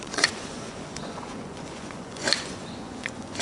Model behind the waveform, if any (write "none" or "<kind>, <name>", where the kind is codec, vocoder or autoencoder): vocoder, Vocos